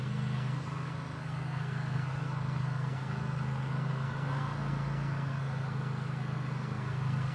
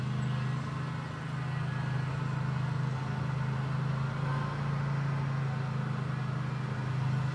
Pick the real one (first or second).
second